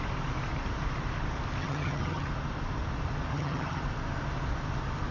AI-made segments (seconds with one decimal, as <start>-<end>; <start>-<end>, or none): 1.6-2.3; 3.3-3.8